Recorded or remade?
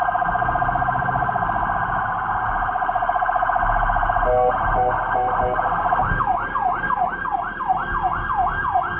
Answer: recorded